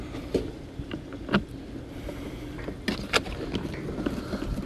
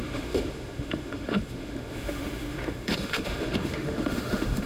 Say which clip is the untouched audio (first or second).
first